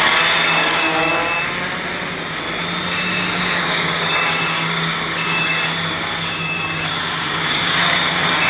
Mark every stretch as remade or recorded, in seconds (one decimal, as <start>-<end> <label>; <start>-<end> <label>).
0.0-1.1 remade; 1.1-2.8 recorded; 2.8-8.5 remade